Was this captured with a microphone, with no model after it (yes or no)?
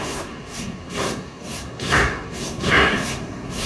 no